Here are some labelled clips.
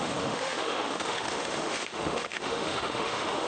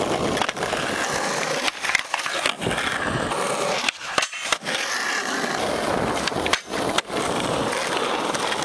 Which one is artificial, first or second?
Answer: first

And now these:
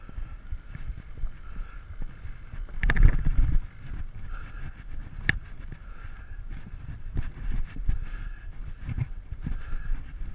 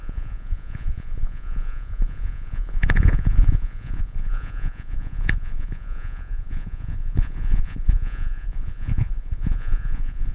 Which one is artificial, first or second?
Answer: second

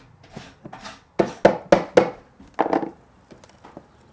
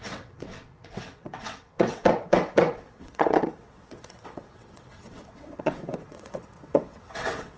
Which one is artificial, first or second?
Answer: second